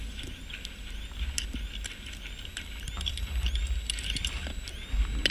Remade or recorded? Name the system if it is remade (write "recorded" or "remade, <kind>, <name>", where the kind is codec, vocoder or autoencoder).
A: recorded